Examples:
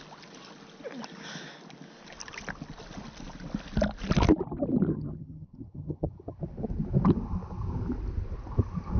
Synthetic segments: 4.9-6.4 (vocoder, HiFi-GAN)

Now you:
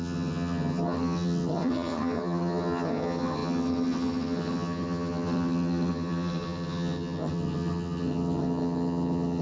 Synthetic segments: 0.0-9.4 (vocoder, HiFi-GAN)

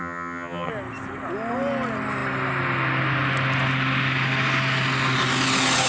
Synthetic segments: 0.0-0.7 (vocoder, HiFi-GAN)

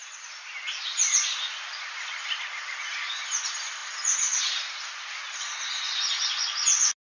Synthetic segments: none